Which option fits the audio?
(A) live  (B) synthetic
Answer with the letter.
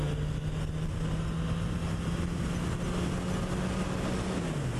A